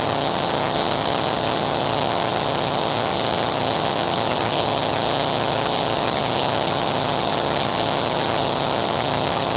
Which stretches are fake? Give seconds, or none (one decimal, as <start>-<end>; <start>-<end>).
0.0-9.6